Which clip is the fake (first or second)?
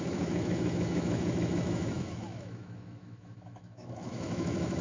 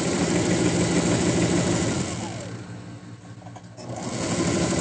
first